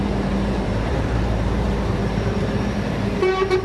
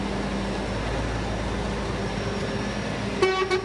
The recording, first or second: second